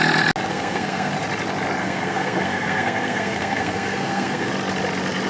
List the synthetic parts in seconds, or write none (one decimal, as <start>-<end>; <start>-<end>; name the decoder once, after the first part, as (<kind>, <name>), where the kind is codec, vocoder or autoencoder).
0.5-1.1 (codec, SNAC); 1.8-4.5